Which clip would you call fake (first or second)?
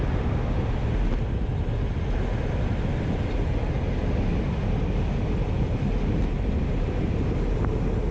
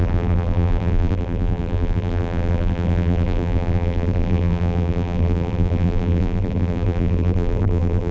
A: second